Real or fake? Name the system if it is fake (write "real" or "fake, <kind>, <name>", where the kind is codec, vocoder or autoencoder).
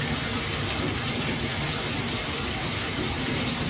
real